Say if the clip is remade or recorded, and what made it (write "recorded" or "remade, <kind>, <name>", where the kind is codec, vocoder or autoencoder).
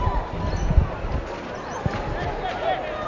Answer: recorded